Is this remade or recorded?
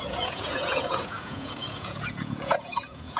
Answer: remade